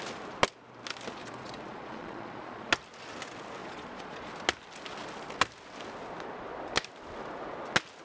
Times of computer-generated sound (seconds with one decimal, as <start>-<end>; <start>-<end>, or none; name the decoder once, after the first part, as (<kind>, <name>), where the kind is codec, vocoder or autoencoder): 1.2-2.7 (vocoder, Vocos); 3.6-4.3